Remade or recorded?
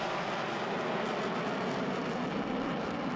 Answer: recorded